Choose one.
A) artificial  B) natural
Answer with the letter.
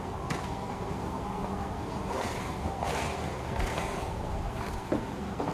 A